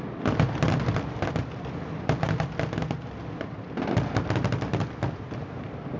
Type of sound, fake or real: real